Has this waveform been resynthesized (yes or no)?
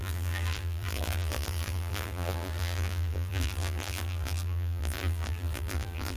yes